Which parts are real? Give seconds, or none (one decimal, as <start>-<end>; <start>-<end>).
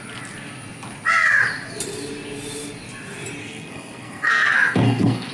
0.0-3.4